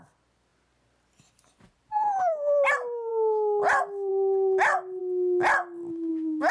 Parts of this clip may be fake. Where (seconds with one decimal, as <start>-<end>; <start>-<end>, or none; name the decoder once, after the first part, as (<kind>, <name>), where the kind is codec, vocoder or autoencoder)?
none